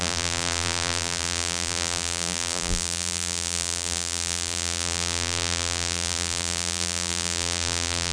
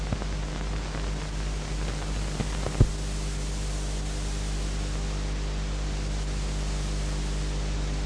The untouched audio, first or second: second